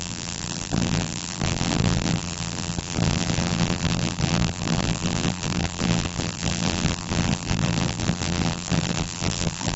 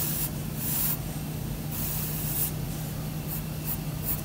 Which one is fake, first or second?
first